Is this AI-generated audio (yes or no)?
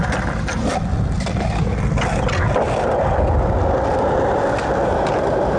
no